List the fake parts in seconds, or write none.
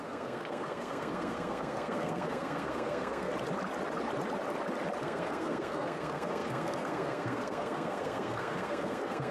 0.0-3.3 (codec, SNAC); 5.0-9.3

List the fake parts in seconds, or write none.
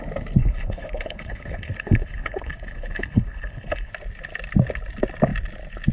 0.4-3.9 (codec, HILCodec)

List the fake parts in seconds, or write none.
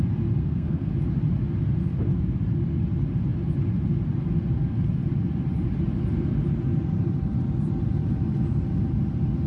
0.4-0.9 (codec, SNAC)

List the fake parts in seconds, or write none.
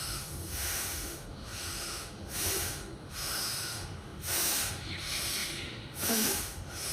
0.0-6.9 (autoencoder, DAC-VAE)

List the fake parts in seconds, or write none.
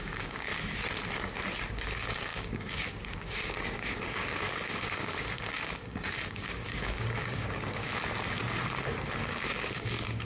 0.0-0.5 (codec, DAC); 1.7-7.9; 9.2-10.2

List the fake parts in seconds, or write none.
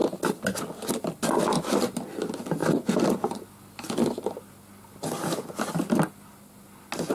none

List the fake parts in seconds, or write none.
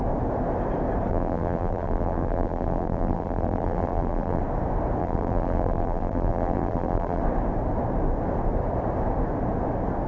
1.1-4.4 (vocoder, BigVGAN v2); 5.0-7.2